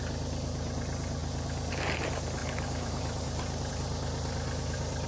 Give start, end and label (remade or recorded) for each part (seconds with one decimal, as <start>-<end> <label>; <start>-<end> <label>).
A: 0.0-2.4 recorded; 2.4-3.7 remade; 3.7-5.1 recorded